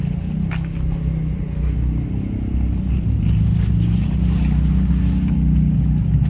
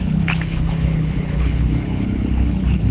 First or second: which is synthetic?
second